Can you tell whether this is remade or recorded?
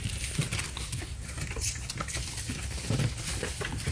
recorded